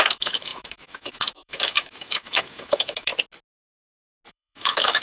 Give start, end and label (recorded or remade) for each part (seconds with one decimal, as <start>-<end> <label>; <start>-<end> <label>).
0.0-3.1 remade; 3.1-4.3 recorded; 4.3-5.0 remade